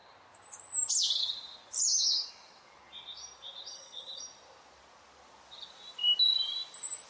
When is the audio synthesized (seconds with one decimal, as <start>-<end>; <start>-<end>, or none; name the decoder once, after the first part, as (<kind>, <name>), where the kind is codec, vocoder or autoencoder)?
3.7-4.2 (vocoder, HiFi-GAN)